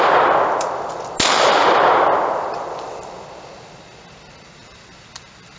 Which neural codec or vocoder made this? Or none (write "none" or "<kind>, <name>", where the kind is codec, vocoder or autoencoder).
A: none